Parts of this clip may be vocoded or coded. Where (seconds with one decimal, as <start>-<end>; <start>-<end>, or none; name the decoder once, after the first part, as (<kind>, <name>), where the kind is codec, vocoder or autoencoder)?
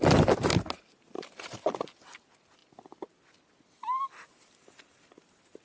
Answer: none